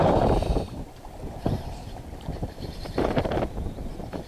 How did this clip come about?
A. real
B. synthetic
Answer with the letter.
B